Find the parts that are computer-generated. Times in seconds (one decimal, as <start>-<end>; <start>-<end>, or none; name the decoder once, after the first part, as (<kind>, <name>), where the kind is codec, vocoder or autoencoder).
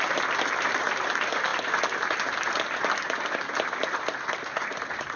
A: none